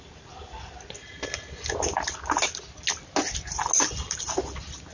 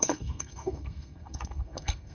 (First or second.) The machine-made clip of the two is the second